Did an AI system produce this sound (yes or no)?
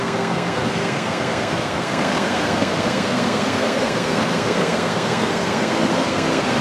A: yes